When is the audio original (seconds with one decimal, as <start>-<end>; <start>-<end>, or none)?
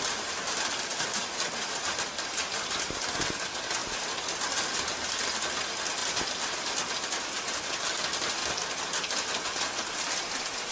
0.0-10.7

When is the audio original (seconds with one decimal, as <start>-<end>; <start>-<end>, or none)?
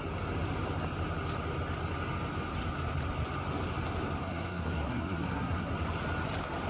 0.0-4.2; 5.7-6.7